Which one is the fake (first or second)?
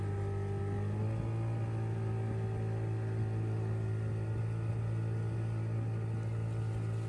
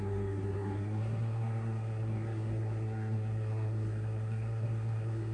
second